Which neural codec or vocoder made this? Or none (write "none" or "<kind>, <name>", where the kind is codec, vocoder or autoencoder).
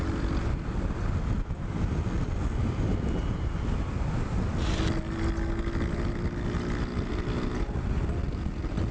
none